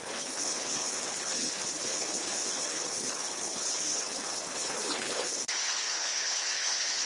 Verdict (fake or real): fake